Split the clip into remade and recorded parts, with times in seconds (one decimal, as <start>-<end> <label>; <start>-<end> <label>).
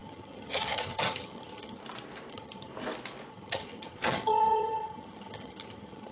0.0-1.8 remade; 1.8-2.3 recorded; 2.3-2.7 remade; 2.7-3.3 recorded; 3.3-6.1 remade